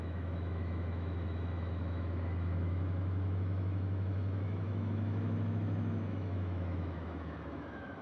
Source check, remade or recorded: remade